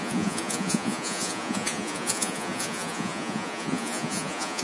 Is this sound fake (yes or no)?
yes